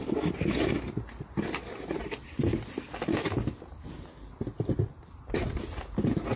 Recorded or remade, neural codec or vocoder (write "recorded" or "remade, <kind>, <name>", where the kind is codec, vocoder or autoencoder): recorded